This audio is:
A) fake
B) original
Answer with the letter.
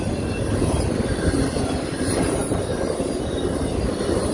B